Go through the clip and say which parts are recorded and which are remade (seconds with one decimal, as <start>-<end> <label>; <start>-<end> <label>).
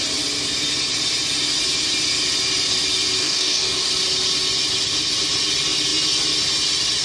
0.0-3.2 recorded; 3.2-3.9 remade; 3.9-7.0 recorded